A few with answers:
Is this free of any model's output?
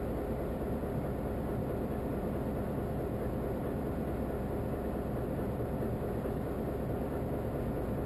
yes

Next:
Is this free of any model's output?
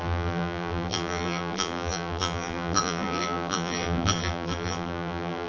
no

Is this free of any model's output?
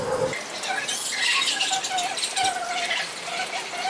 yes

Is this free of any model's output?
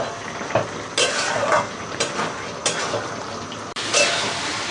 yes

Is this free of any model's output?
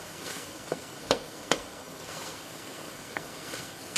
no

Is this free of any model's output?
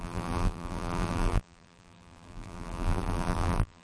no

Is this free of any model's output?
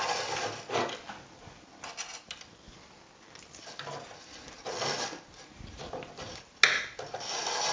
yes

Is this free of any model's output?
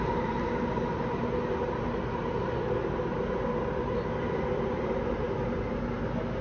yes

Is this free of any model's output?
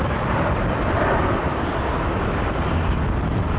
yes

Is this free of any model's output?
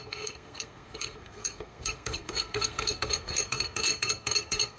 no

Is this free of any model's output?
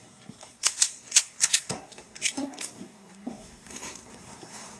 no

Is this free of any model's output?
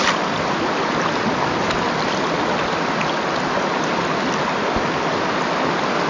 yes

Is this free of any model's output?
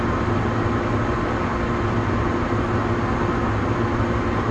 yes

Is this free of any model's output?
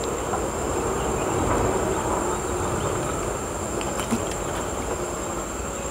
yes